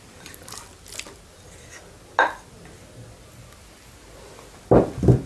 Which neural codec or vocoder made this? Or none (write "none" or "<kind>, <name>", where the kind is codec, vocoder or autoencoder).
none